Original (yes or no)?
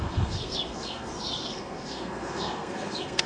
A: no